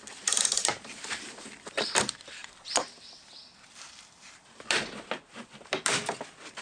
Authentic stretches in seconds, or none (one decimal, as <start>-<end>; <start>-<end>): none